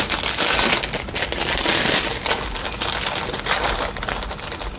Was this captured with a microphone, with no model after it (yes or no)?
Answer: yes